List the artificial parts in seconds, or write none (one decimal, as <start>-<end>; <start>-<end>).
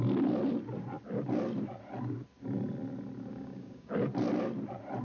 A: 3.3-4.0